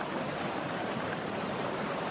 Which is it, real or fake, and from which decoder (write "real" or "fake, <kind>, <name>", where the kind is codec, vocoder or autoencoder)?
fake, vocoder, BigVGAN v2